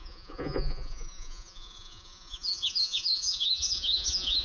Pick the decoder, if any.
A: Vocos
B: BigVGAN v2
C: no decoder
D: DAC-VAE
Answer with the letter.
A